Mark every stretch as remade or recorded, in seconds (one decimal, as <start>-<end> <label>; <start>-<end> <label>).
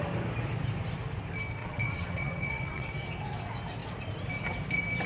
0.0-1.6 recorded; 1.6-2.9 remade; 2.9-5.1 recorded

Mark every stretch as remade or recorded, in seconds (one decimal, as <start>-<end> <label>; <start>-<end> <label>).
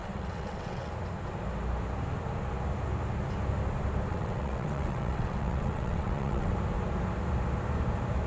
0.0-0.9 remade; 0.9-4.1 recorded; 4.1-6.5 remade; 6.5-8.3 recorded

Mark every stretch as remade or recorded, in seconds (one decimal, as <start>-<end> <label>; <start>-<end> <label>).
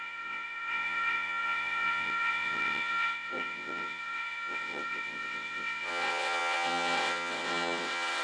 0.0-8.2 remade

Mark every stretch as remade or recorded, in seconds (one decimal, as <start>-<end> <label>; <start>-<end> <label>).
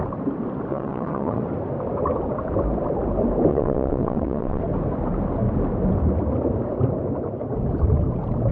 0.0-0.7 recorded; 0.7-1.4 remade; 1.4-3.5 recorded; 3.5-4.6 remade; 4.6-8.5 recorded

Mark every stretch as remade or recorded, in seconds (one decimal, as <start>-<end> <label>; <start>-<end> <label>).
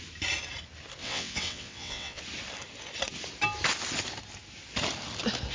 0.0-1.0 recorded; 1.0-2.2 remade; 2.2-5.5 recorded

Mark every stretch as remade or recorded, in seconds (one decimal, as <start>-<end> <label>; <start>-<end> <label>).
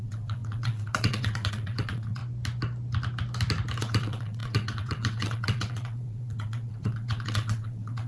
0.0-2.2 remade; 2.2-3.8 recorded; 3.8-8.1 remade